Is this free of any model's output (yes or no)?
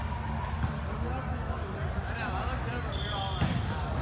yes